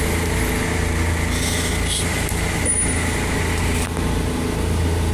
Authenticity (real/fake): real